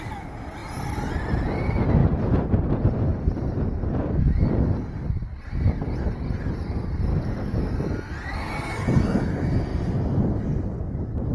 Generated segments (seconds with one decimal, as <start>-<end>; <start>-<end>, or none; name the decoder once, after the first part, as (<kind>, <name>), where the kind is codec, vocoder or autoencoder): 7.1-7.6 (codec, DAC)